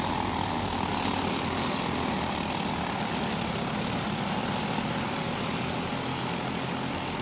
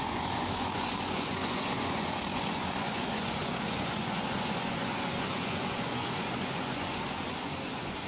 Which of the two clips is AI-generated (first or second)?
second